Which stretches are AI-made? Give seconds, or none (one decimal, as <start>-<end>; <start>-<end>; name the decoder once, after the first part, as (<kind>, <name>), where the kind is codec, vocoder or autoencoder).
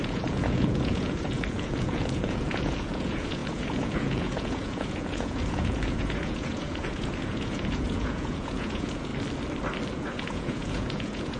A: 0.0-9.1 (vocoder, Vocos); 9.9-11.4